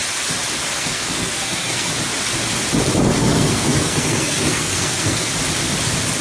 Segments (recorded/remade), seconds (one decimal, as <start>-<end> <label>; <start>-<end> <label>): 0.0-0.6 recorded; 0.6-1.9 remade; 1.9-3.2 recorded; 3.2-5.3 remade; 5.3-6.2 recorded